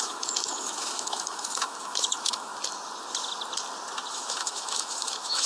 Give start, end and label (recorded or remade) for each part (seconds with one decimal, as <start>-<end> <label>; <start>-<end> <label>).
0.0-2.5 remade; 2.5-4.1 recorded; 4.1-5.5 remade